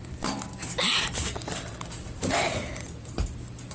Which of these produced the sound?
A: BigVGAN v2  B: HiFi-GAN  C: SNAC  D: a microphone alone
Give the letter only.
A